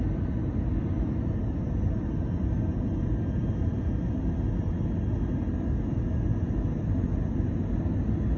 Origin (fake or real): real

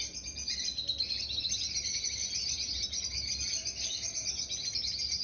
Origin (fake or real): real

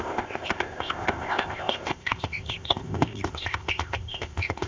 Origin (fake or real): fake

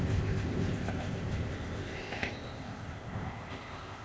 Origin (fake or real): fake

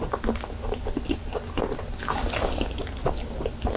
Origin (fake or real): real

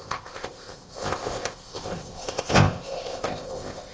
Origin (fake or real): fake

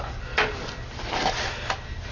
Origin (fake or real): real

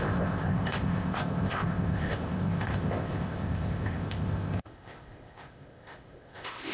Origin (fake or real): fake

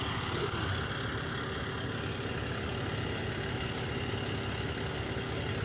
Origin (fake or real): real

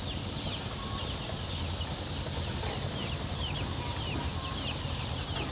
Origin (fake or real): real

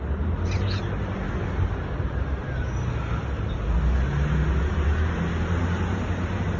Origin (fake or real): real